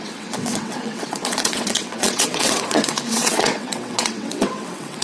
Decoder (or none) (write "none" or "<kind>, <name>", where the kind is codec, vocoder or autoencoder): vocoder, WaveNeXt